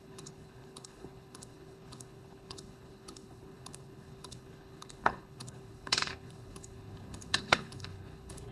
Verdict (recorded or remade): remade